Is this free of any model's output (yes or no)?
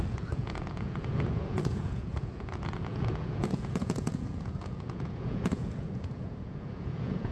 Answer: no